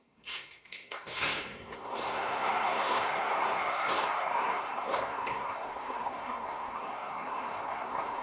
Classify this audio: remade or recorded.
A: remade